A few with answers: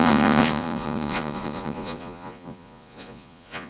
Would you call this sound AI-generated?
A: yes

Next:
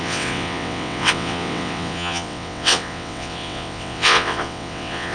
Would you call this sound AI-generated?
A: yes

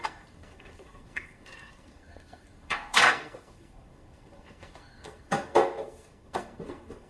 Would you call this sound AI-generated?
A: yes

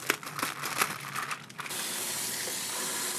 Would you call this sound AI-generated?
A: no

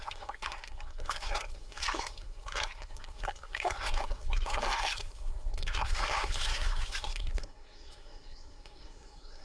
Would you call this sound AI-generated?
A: yes